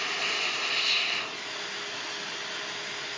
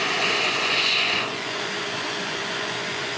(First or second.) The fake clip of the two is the second